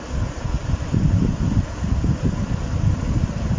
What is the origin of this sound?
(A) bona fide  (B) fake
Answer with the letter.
A